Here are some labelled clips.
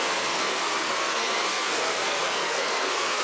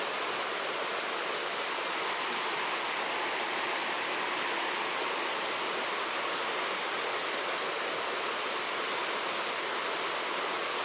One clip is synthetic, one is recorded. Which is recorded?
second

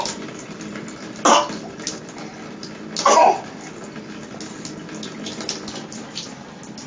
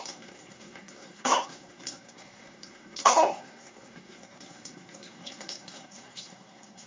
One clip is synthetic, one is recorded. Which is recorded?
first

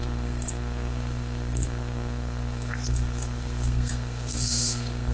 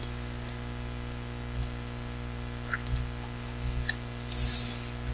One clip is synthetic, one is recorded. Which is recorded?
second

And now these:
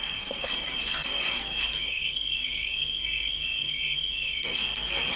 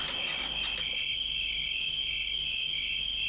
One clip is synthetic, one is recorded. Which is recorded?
second